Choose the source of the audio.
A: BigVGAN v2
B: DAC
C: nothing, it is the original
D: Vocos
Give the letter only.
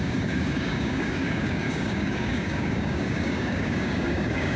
B